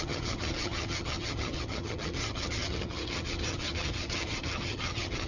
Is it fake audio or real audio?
fake